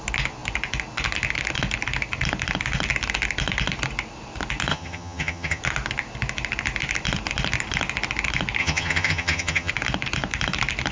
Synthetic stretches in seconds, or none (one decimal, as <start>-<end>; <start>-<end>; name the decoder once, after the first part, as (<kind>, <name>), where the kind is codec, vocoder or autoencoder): 4.7-5.6 (vocoder, HiFi-GAN); 8.6-9.7